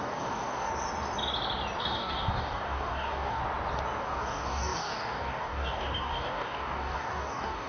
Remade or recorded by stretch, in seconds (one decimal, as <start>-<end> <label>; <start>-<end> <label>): 0.0-0.7 remade; 0.7-1.8 recorded; 1.8-3.4 remade; 3.4-4.0 recorded; 4.0-7.7 remade

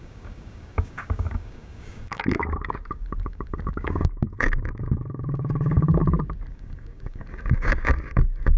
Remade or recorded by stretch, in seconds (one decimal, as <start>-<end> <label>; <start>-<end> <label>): 0.0-6.0 remade; 6.0-6.5 recorded; 6.5-8.6 remade

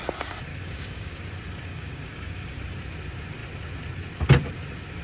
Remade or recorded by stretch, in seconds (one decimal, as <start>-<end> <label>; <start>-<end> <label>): 0.0-0.5 recorded; 0.5-1.2 remade; 1.2-1.7 recorded; 1.7-2.6 remade; 2.6-5.0 recorded

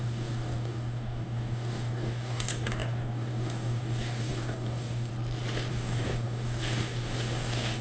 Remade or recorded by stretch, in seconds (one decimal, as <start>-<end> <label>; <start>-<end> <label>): 0.0-5.1 remade; 5.1-5.7 recorded; 5.7-7.8 remade

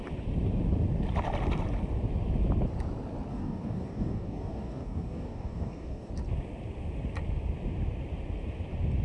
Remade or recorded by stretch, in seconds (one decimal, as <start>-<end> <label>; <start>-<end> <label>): 0.0-3.3 recorded; 3.3-6.1 remade; 6.1-9.0 recorded

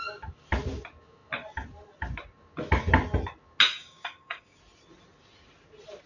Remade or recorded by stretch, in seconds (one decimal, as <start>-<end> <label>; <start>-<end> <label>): 0.0-3.7 recorded; 3.7-4.6 remade; 4.6-6.1 recorded

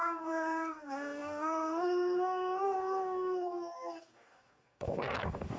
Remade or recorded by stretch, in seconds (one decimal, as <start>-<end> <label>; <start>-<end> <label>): 0.0-5.6 remade

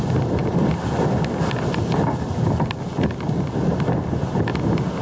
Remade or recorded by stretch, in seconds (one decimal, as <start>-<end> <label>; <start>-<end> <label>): 0.0-5.0 recorded